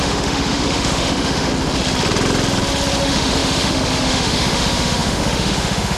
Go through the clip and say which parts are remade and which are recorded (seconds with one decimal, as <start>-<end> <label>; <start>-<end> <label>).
0.0-1.5 remade; 1.5-3.0 recorded; 3.0-6.0 remade